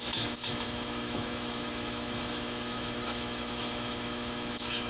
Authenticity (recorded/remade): remade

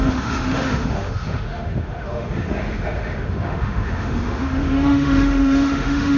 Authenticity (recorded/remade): remade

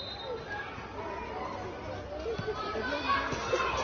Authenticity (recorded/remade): recorded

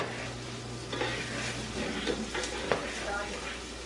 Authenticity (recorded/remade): recorded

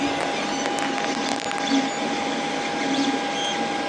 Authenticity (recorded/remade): recorded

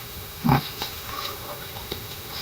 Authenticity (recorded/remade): remade